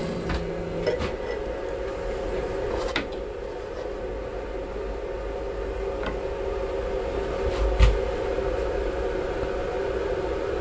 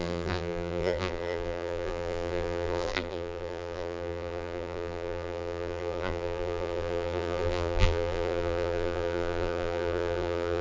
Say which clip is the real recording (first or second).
first